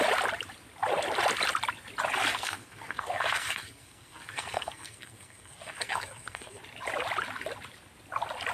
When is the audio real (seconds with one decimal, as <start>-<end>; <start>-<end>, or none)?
0.0-2.3; 6.6-8.5